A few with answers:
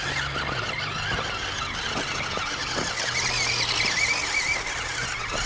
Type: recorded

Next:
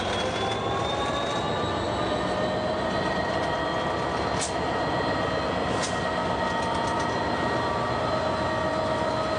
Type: recorded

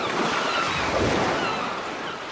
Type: recorded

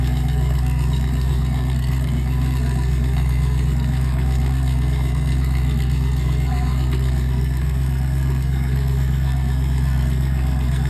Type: remade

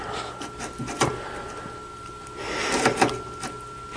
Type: recorded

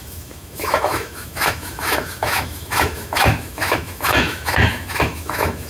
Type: remade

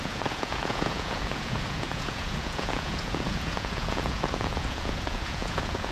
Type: remade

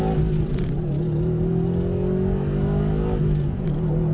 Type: recorded